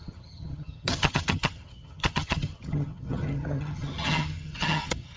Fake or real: fake